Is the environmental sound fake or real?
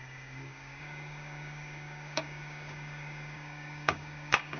fake